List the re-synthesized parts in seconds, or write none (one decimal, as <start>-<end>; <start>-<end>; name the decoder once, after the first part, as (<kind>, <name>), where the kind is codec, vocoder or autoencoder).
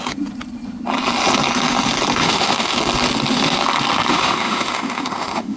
2.2-2.8 (autoencoder, DAC-VAE); 4.1-5.6